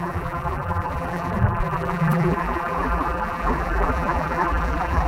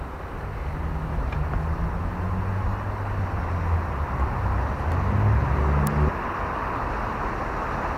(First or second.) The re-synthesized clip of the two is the first